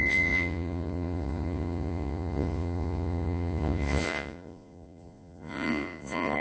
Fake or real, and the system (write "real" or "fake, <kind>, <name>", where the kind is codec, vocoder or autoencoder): fake, vocoder, Vocos